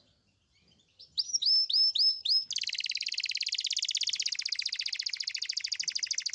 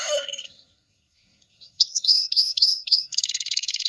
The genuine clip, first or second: first